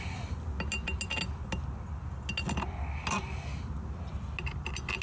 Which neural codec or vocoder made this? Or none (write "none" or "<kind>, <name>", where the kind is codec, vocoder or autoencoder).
none